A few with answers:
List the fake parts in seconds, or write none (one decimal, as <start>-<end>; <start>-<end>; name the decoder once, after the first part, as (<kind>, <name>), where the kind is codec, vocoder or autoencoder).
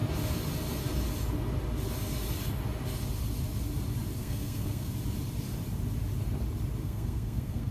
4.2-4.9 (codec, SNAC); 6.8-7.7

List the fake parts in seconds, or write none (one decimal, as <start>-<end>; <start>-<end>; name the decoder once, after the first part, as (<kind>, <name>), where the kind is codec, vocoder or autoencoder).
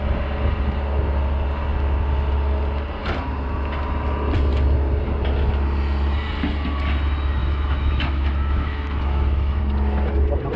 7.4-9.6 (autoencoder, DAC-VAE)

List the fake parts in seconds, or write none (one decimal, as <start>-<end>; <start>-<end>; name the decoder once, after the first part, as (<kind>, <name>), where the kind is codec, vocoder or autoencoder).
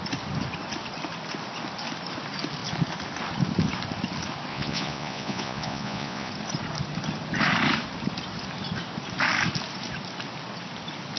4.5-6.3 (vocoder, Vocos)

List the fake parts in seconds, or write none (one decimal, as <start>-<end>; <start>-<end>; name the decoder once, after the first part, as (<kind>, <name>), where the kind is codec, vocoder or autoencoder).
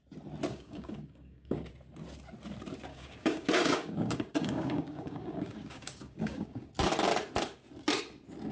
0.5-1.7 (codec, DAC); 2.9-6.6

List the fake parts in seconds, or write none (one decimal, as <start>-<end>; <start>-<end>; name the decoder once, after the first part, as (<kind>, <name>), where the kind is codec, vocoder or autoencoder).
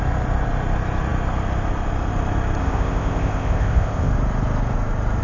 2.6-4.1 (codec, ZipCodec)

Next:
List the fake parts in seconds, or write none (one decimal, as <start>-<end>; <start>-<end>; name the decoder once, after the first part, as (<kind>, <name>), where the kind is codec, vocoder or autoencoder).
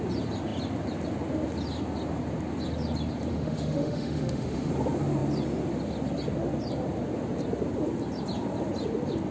3.3-4.7 (autoencoder, DAC-VAE)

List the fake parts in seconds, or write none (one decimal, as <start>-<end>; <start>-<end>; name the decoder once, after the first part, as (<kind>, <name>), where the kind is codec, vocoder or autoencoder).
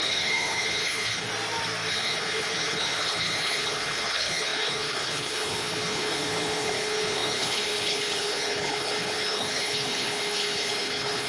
0.0-1.3 (codec, HILCodec); 1.9-11.3